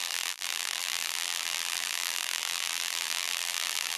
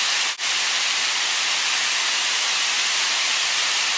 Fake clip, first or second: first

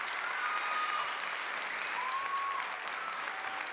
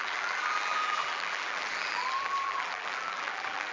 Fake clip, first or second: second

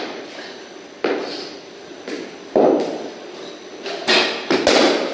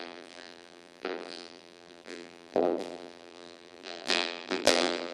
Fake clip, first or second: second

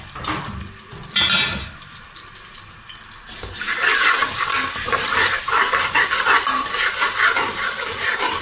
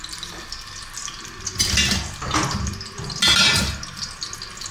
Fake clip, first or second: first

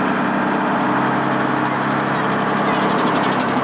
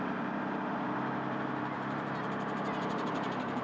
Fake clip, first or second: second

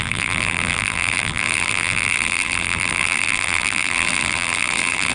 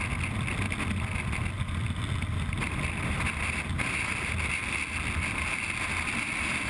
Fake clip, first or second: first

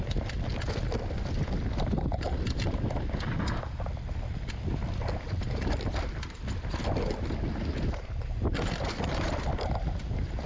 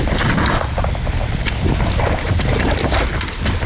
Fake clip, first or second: second